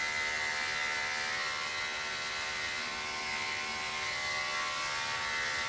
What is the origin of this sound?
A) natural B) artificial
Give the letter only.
A